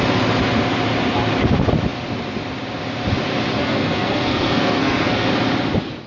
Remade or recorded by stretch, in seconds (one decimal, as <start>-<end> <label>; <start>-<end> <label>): 0.0-3.6 recorded; 3.6-5.3 remade; 5.3-6.1 recorded